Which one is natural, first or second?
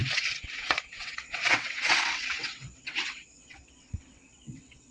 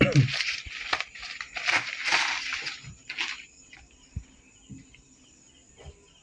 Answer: second